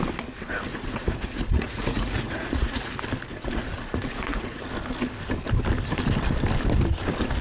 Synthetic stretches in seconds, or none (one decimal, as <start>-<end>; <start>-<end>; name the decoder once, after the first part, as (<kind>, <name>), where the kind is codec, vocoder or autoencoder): 0.7-2.9 (vocoder, Vocos); 3.3-4.6